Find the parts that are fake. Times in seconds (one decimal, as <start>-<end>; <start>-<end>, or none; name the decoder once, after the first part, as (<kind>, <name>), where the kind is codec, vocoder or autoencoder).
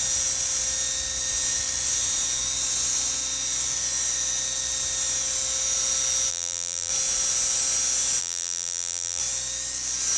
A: 6.3-6.9 (vocoder, BigVGAN v2); 8.2-9.2